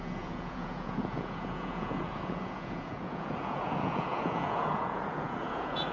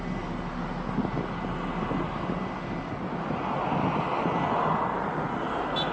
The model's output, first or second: first